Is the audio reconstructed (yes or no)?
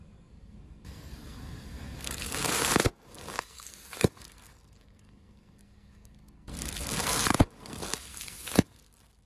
yes